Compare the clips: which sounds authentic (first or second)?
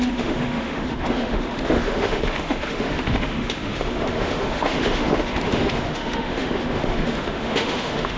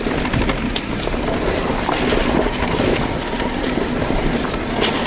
second